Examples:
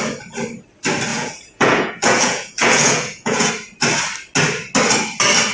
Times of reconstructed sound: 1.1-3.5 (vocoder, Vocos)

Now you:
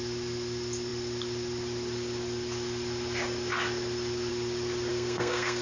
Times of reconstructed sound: 4.9-5.6 (codec, SNAC)

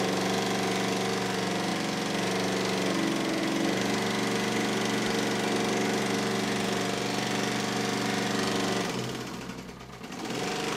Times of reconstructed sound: none

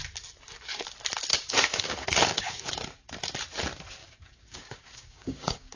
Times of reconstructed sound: 1.3-2.7 (codec, DAC); 4.0-5.8

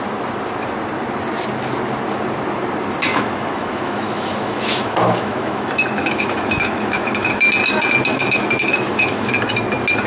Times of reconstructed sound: 3.1-7.5 (autoencoder, DAC-VAE); 8.1-9.5

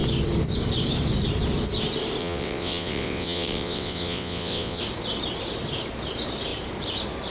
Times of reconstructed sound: 2.2-4.8 (vocoder, WaveNeXt)

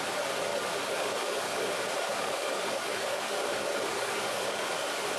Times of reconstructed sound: 0.5-1.5 (codec, DAC); 2.1-4.7